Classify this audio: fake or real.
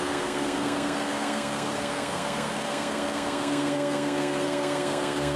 fake